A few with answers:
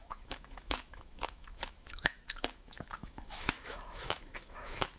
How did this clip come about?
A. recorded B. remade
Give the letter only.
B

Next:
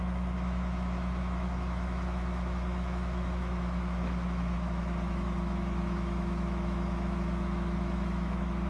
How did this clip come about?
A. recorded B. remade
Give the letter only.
B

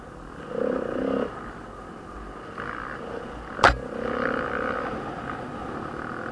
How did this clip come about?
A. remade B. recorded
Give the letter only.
B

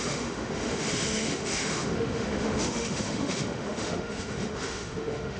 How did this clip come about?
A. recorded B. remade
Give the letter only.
B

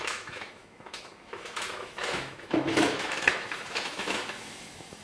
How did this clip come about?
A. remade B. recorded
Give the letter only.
A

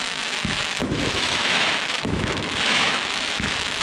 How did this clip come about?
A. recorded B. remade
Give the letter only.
B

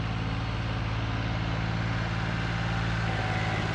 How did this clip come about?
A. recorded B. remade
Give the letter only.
A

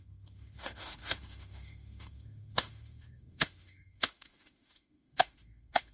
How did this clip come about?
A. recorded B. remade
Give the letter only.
B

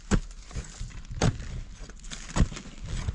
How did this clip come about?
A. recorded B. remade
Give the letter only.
A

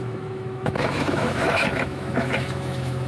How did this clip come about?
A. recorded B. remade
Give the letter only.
B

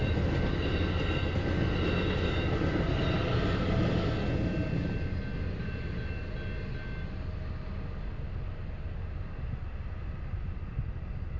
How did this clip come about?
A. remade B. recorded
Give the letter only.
B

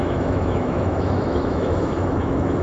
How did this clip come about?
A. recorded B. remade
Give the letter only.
B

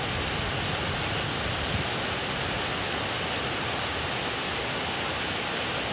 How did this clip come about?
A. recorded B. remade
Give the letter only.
A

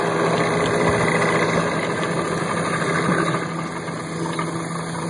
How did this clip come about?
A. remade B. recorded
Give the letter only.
B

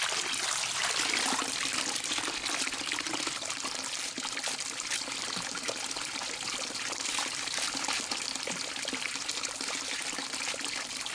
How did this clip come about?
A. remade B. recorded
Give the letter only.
B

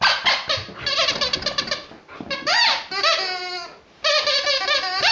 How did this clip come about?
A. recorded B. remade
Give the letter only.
A